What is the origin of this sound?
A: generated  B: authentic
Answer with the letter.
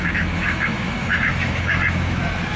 A